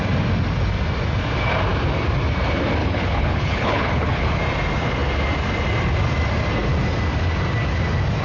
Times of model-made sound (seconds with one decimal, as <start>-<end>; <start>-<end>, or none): 2.8-4.4